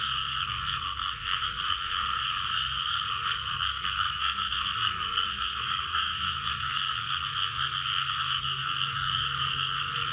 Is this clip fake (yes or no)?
yes